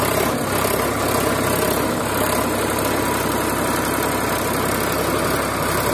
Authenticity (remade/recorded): recorded